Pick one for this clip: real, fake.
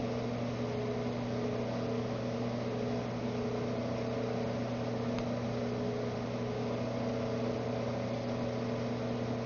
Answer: real